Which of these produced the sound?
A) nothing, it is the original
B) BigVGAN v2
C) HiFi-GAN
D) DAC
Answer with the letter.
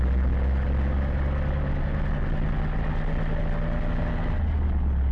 A